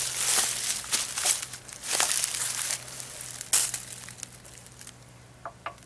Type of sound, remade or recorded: recorded